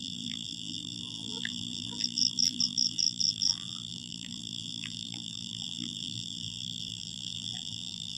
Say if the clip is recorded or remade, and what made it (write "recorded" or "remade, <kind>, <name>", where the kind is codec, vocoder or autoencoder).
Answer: remade, vocoder, BigVGAN v2